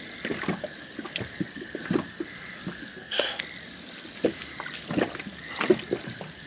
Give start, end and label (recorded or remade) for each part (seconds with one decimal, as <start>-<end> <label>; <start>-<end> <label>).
0.0-2.9 recorded; 2.9-3.4 remade; 3.4-6.5 recorded